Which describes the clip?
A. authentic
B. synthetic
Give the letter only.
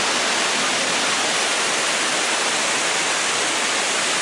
A